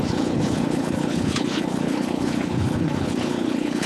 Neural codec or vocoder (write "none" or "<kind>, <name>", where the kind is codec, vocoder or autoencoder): codec, HILCodec